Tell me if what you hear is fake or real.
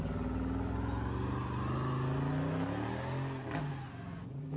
real